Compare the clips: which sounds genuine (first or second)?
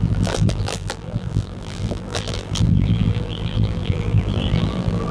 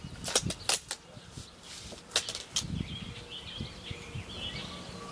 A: second